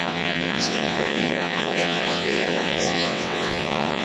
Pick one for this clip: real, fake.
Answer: fake